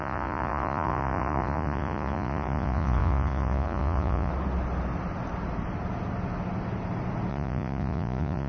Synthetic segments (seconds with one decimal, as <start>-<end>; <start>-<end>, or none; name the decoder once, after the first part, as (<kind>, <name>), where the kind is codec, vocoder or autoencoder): 0.0-4.3 (vocoder, Vocos); 7.3-8.5